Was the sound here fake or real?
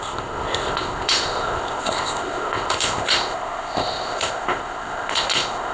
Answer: fake